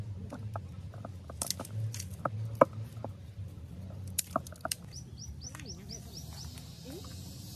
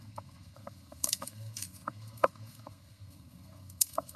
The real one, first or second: first